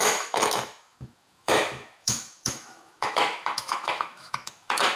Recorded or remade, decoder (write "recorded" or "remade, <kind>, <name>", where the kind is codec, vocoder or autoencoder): remade, autoencoder, DAC-VAE